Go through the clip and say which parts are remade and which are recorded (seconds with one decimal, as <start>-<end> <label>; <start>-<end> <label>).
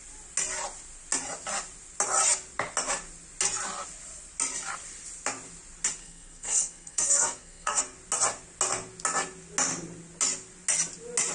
0.0-6.0 recorded; 6.0-7.8 remade; 7.8-11.3 recorded